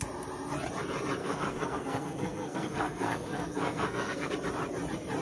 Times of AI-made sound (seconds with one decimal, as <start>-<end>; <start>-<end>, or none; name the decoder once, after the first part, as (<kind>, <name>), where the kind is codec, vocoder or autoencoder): 1.2-4.3 (codec, SNAC)